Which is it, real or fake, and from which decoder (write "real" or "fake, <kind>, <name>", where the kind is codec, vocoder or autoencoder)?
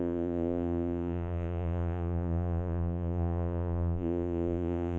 fake, vocoder, Vocos